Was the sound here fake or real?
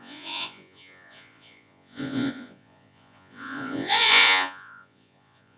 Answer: fake